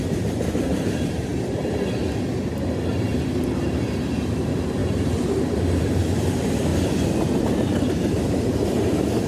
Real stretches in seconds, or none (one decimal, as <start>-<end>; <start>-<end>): 1.3-3.4; 6.7-7.4